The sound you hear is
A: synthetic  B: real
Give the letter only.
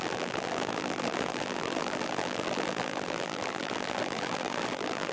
A